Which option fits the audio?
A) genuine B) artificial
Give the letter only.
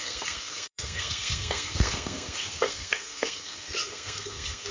B